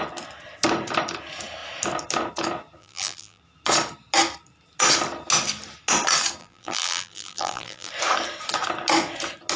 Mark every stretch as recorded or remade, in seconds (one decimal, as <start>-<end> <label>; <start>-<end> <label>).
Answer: 0.0-2.8 recorded; 2.8-3.4 remade; 3.4-6.4 recorded; 6.4-7.9 remade; 7.9-9.6 recorded